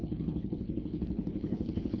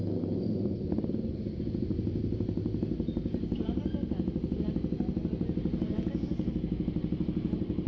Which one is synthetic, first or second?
first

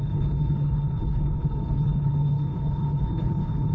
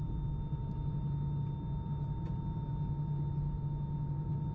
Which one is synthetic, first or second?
first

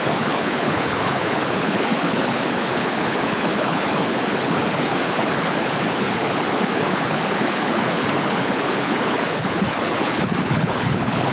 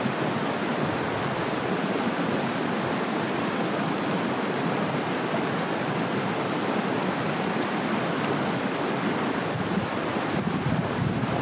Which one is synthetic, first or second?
first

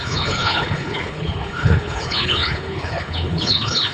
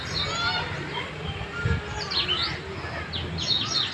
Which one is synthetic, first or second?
first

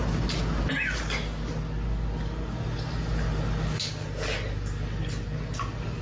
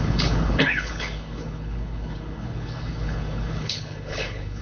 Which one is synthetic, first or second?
second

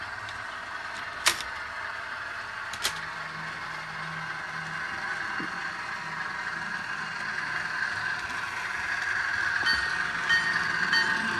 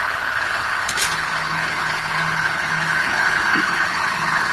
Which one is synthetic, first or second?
second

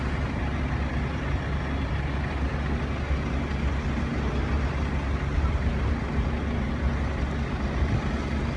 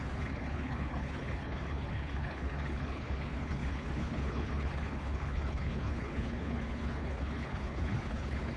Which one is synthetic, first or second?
second